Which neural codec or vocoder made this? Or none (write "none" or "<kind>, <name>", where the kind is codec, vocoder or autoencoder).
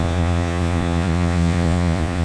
vocoder, Vocos